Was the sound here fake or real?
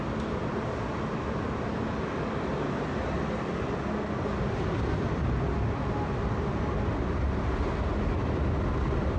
real